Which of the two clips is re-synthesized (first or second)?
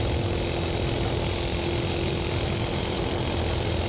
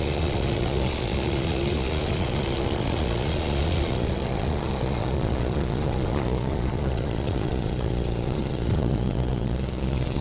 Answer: second